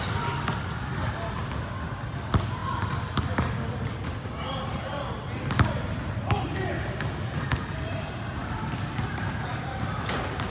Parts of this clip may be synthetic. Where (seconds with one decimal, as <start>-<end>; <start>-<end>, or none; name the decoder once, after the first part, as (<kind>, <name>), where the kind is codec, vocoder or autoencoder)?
none